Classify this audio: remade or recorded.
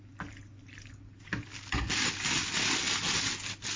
recorded